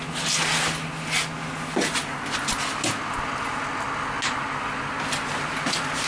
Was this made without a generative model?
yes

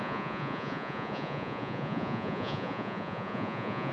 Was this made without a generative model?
no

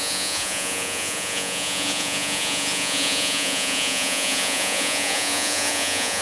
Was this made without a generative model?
no